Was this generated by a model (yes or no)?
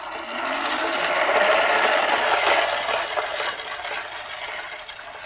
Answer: no